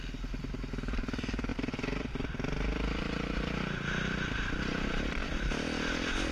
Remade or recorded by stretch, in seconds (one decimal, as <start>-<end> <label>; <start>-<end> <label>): 0.0-1.5 recorded; 1.5-5.3 remade; 5.3-6.3 recorded